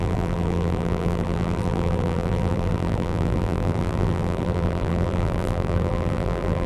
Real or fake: fake